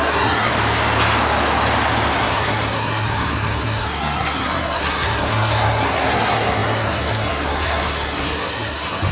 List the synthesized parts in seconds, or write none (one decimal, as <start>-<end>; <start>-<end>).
0.0-0.5; 2.2-9.1